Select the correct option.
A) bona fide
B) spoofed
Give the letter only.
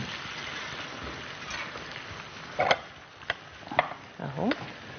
A